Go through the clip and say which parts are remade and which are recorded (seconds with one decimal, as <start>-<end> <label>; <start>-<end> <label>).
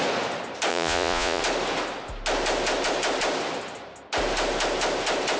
0.0-0.7 recorded; 0.7-1.4 remade; 1.4-5.4 recorded